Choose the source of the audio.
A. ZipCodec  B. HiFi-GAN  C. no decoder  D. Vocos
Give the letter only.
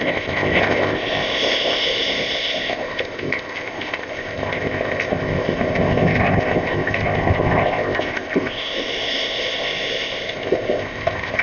A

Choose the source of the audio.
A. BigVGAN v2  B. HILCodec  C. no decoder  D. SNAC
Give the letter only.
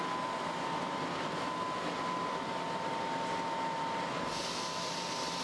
C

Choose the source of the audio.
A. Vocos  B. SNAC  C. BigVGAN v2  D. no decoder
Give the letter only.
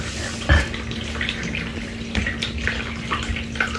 D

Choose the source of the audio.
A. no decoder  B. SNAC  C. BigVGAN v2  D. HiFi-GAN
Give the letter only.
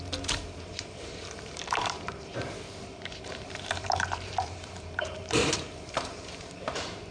C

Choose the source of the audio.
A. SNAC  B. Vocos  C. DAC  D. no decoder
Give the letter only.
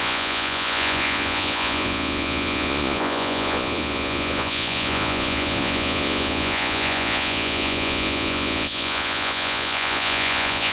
B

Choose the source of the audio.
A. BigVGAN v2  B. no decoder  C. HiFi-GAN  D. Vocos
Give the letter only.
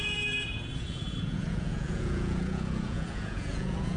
D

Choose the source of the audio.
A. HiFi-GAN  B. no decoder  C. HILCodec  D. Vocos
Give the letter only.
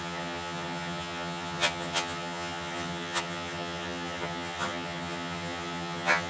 A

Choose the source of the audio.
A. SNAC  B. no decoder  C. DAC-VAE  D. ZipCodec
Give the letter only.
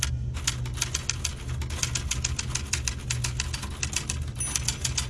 B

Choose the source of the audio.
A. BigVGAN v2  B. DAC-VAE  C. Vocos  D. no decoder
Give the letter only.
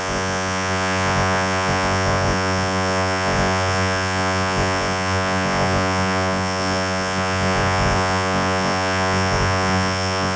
C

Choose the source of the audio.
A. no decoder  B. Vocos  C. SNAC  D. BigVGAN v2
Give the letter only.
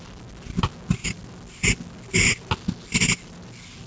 A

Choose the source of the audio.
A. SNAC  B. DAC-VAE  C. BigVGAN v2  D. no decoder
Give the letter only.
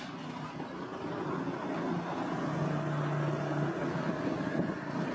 D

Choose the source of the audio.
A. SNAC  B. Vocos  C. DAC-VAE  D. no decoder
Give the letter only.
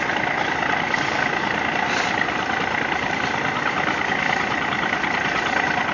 D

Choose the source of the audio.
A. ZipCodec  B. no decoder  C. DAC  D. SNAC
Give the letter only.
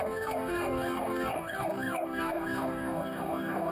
C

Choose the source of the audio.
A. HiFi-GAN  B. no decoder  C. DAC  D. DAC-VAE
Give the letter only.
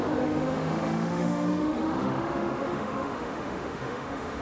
D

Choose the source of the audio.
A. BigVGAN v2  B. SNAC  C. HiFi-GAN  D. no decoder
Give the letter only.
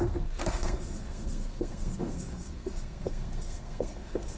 B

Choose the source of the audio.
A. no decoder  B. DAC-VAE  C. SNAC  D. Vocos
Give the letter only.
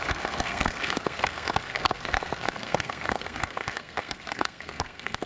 C